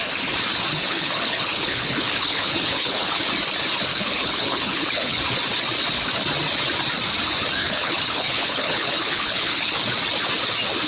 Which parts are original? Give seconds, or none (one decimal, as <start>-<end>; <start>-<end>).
0.0-0.7; 3.2-3.9; 5.2-7.6; 9.7-10.9